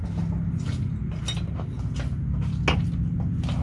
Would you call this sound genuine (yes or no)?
yes